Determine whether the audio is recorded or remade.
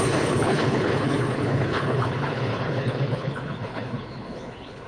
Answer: remade